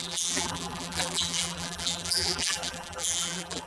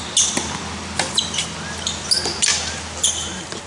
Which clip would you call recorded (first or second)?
second